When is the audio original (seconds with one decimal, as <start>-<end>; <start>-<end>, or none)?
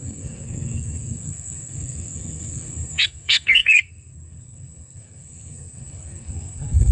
none